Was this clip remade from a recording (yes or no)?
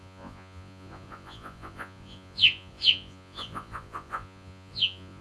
yes